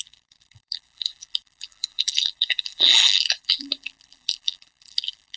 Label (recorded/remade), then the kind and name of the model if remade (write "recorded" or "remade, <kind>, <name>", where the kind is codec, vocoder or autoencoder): remade, vocoder, BigVGAN v2